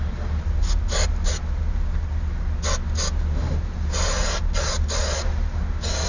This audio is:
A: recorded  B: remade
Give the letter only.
A